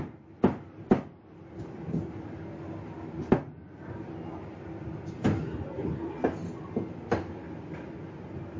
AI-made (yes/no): no